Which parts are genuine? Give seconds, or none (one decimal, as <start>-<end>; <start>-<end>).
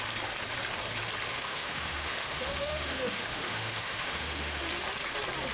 0.0-1.3; 4.6-5.5